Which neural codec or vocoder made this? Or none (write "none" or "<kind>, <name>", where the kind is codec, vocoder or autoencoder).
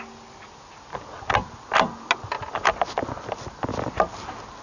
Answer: none